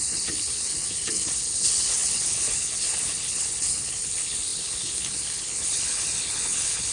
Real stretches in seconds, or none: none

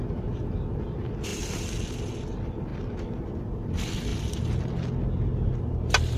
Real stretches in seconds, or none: 0.0-6.2

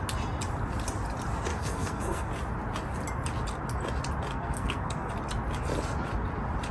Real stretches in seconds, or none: 0.0-1.5; 2.3-4.3; 5.1-6.7